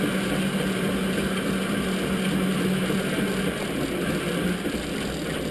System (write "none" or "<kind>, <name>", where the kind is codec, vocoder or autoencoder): none